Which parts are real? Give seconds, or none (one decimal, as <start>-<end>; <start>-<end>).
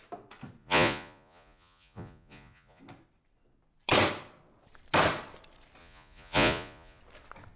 0.0-0.6; 2.8-5.8; 7.0-7.6